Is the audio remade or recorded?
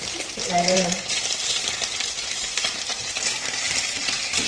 remade